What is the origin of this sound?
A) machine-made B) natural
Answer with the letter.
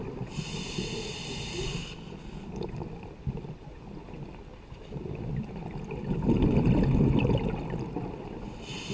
B